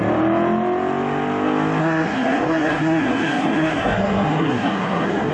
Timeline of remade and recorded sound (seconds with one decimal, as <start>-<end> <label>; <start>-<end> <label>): 0.0-1.8 recorded; 1.8-5.3 remade